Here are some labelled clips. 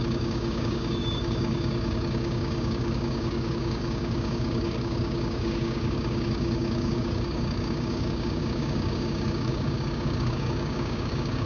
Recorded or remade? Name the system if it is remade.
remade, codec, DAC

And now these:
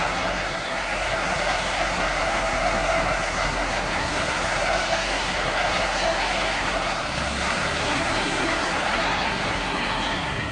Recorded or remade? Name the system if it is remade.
remade, codec, SNAC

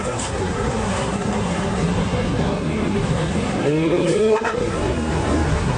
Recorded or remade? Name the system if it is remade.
remade, codec, SNAC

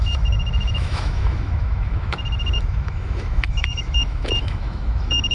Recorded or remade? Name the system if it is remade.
remade, autoencoder, DAC-VAE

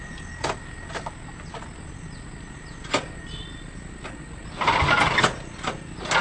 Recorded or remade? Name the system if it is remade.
recorded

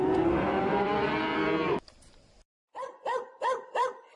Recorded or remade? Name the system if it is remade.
remade, vocoder, BigVGAN v2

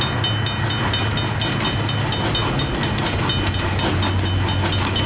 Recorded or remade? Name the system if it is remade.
recorded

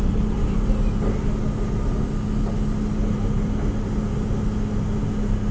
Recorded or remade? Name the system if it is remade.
recorded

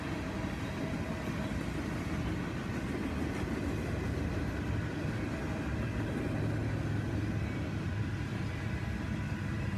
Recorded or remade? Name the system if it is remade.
recorded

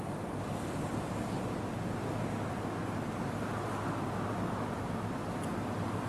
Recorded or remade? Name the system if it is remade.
recorded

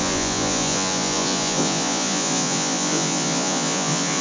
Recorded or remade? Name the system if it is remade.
remade, vocoder, Vocos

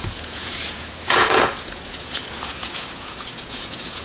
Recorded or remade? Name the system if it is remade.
remade, vocoder, Vocos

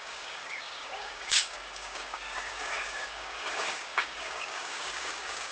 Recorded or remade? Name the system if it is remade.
remade, codec, DAC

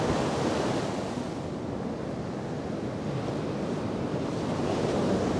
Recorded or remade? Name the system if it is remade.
recorded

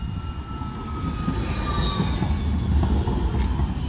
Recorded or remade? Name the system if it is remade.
recorded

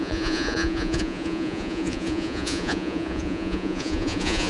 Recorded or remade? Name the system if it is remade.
remade, vocoder, Vocos